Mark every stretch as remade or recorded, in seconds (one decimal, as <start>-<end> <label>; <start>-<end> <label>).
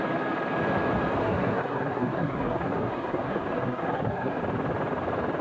0.0-1.2 recorded; 1.2-4.4 remade; 4.4-5.4 recorded